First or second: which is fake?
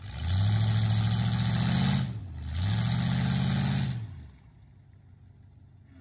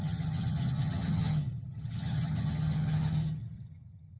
second